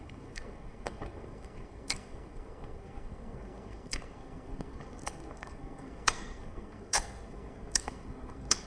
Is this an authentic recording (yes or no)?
no